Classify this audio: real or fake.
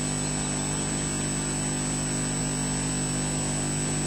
real